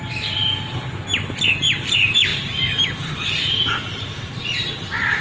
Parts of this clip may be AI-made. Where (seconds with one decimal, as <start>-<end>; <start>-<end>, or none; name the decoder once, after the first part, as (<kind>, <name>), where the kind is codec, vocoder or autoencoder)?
0.0-0.4 (vocoder, BigVGAN v2); 1.5-5.2